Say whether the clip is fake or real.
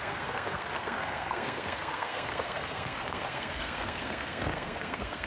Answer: fake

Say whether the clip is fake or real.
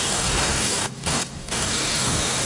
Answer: fake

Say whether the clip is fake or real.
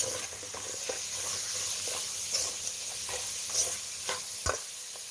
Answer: real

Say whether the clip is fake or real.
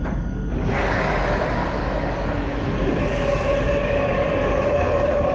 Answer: fake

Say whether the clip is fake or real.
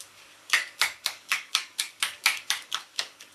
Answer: fake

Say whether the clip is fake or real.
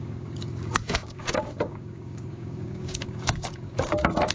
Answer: fake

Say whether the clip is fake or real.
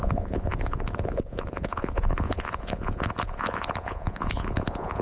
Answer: fake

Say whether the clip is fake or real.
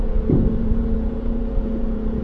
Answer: fake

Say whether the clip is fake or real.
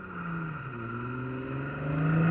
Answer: real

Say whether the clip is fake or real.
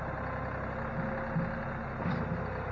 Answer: real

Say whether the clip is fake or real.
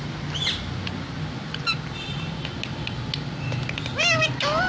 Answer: real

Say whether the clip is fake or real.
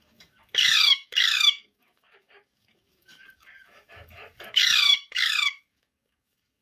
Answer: fake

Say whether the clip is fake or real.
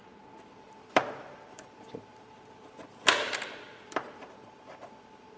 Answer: fake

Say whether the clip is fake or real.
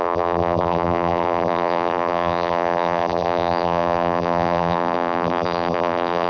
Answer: fake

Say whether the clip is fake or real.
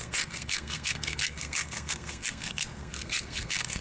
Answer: fake